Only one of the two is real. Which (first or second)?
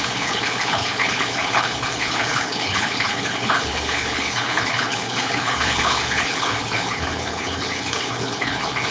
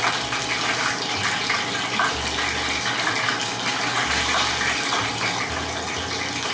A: second